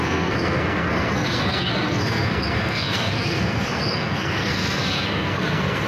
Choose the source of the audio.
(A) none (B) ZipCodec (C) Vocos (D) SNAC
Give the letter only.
D